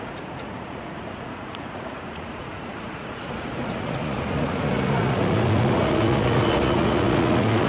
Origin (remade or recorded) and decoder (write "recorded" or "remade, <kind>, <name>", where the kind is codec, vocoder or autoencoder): remade, vocoder, Vocos